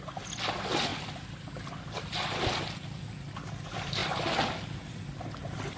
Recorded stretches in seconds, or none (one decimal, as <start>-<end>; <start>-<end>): 0.0-5.8

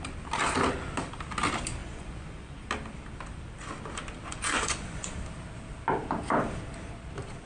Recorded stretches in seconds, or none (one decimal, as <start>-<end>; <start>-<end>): 0.0-1.8; 2.6-4.2; 5.1-7.5

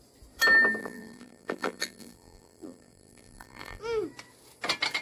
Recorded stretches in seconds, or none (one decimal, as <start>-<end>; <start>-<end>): 0.0-0.8; 3.8-5.0

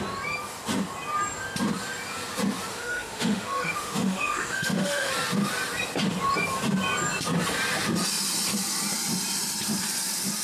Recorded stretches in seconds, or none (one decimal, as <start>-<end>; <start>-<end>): 0.0-2.7; 5.1-10.4

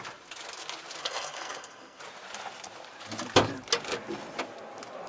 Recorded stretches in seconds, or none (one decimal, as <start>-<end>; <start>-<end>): 0.0-1.0; 2.0-5.1

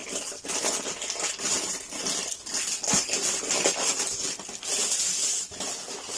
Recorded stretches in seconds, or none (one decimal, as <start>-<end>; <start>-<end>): 0.0-6.2